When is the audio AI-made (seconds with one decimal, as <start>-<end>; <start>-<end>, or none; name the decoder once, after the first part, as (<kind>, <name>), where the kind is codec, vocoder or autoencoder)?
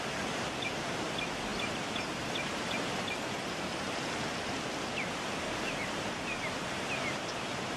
none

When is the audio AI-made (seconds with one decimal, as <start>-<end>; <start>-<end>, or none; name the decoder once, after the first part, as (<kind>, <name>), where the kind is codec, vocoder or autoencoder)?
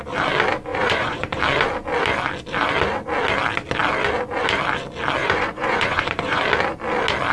0.7-1.4 (vocoder, Vocos); 5.2-6.4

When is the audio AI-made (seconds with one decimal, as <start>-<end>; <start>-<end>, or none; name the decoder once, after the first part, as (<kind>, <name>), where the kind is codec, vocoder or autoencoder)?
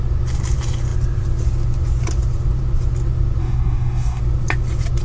3.4-4.2 (codec, DAC)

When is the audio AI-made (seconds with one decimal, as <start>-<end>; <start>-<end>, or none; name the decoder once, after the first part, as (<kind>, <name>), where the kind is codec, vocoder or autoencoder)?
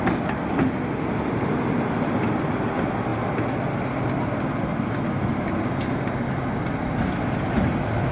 none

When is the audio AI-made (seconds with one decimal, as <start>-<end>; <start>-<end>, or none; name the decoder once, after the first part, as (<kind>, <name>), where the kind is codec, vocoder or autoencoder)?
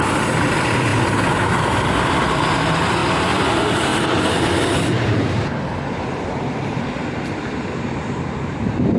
0.0-3.0 (vocoder, BigVGAN v2); 3.5-9.0